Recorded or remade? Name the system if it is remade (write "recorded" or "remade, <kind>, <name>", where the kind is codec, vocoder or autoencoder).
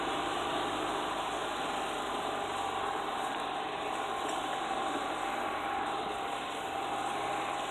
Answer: remade, vocoder, BigVGAN v2